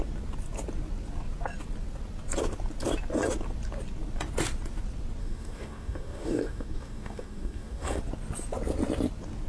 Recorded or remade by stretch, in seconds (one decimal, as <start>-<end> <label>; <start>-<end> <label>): 0.0-5.2 recorded; 5.2-8.0 remade; 8.0-9.5 recorded